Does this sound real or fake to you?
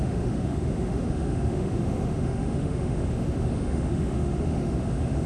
fake